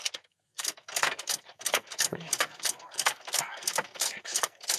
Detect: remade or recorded remade